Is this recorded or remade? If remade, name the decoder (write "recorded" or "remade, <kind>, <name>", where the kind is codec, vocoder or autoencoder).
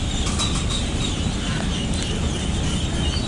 recorded